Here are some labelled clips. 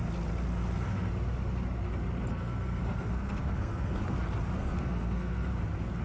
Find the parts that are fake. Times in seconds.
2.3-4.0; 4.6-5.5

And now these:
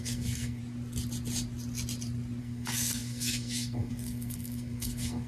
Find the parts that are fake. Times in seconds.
0.0-0.6; 2.4-5.3